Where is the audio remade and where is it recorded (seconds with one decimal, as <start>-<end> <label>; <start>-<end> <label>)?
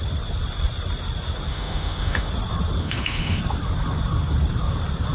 0.0-1.5 recorded; 1.5-2.3 remade; 2.3-2.8 recorded; 2.8-3.4 remade; 3.4-5.1 recorded